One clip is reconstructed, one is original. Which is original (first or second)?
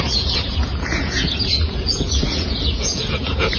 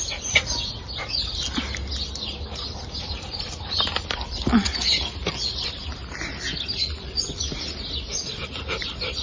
second